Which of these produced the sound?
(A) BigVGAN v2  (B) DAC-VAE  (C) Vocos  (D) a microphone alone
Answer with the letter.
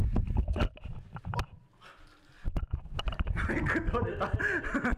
D